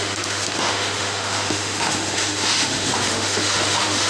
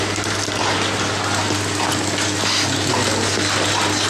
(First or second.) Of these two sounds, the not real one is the first